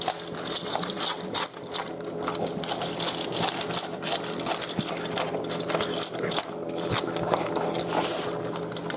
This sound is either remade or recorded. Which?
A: recorded